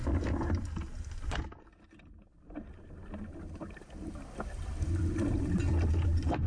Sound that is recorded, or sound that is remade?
recorded